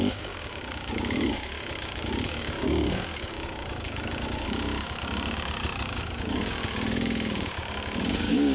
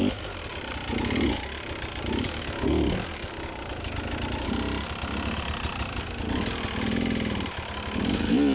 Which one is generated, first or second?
first